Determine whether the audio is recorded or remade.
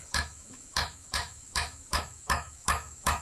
remade